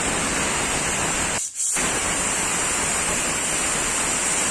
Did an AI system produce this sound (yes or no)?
no